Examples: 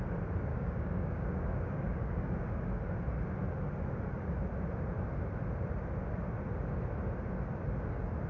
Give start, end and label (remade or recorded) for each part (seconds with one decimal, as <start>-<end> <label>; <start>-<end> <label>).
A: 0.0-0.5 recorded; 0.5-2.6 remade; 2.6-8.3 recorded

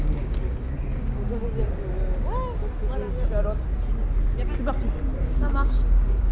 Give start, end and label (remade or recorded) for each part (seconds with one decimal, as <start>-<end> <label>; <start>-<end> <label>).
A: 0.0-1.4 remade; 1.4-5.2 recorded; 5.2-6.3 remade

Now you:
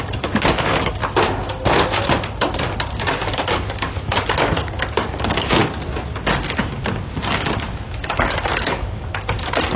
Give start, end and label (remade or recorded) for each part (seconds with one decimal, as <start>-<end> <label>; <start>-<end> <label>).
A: 0.0-1.0 remade; 1.0-2.9 recorded; 2.9-9.8 remade

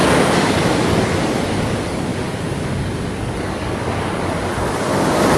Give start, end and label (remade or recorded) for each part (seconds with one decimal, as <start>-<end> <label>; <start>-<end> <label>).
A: 0.0-5.4 remade